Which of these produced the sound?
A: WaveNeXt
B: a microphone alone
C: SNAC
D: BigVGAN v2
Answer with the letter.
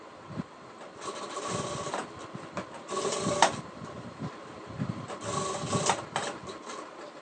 B